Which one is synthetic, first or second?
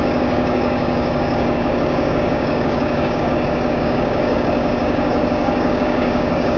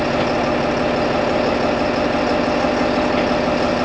first